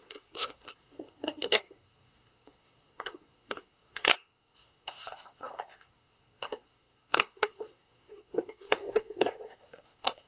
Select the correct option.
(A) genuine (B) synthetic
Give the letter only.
B